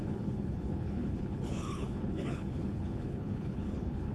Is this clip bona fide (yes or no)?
no